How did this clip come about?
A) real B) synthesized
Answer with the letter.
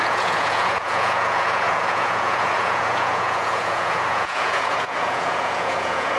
B